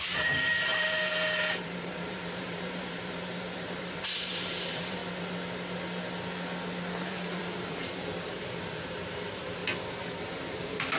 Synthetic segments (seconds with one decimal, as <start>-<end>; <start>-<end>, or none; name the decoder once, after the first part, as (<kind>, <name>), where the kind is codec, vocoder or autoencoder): 0.0-5.0 (vocoder, BigVGAN v2); 7.1-9.6; 10.2-11.0